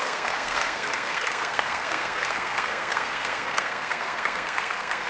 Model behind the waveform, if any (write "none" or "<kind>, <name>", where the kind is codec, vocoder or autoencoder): codec, SNAC